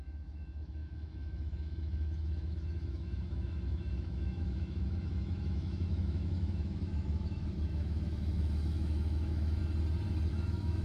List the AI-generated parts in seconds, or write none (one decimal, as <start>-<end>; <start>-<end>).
0.0-9.6; 10.3-10.8